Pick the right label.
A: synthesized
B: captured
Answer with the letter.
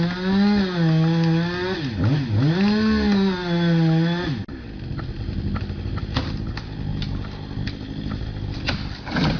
B